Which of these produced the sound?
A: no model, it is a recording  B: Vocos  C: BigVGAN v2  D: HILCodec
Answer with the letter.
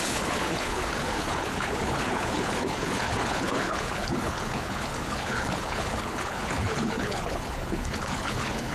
D